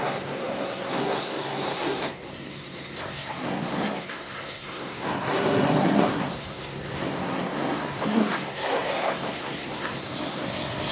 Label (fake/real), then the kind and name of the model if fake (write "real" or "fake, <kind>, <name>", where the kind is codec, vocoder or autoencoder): fake, codec, SNAC